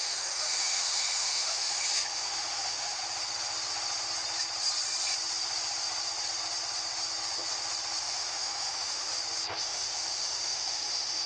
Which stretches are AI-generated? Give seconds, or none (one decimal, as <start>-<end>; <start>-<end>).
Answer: 0.0-3.0; 8.0-9.1; 9.6-11.3